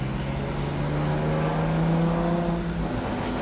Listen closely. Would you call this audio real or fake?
real